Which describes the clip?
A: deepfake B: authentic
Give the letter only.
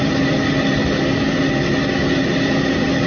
B